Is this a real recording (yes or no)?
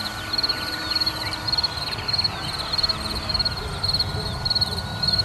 yes